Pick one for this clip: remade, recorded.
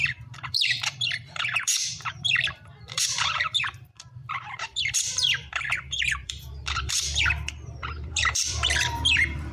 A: remade